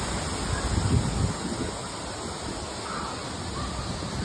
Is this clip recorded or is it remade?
recorded